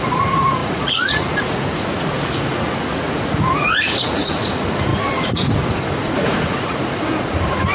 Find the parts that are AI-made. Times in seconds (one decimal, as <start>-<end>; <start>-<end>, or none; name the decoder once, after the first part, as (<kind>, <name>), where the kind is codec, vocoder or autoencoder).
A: 0.0-7.7 (vocoder, Vocos)